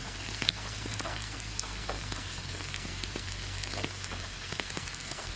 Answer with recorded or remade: remade